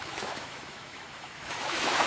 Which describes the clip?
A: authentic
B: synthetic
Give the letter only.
B